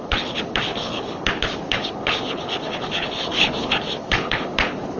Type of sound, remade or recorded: remade